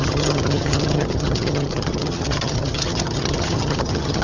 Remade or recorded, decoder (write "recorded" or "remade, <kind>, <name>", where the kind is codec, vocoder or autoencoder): remade, vocoder, HiFi-GAN